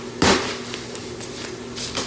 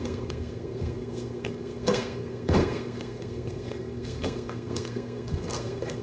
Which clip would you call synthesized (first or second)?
second